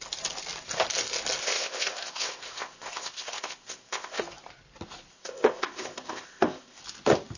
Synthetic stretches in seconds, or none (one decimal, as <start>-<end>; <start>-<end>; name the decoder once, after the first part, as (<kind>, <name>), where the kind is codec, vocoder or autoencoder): 1.4-4.2 (codec, ZipCodec); 5.1-6.8